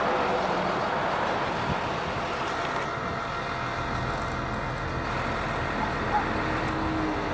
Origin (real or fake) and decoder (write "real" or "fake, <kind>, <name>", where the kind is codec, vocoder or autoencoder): real